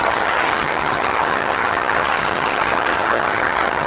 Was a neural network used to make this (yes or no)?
yes